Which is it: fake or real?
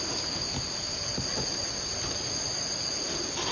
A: real